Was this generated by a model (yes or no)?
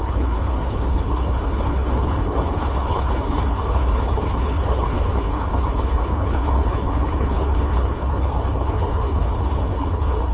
yes